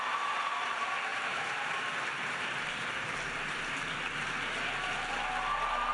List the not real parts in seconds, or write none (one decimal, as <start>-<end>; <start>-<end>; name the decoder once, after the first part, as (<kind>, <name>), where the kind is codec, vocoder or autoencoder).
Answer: 1.1-3.8 (vocoder, BigVGAN v2)